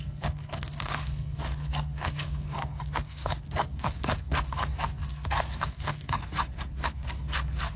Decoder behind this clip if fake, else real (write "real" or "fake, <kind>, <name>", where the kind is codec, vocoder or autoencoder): fake, codec, SNAC